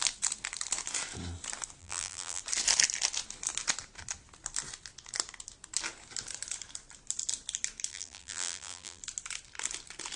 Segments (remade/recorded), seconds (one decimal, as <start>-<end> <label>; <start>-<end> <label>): 0.0-1.8 recorded; 1.8-2.4 remade; 2.4-7.9 recorded; 7.9-9.0 remade; 9.0-10.2 recorded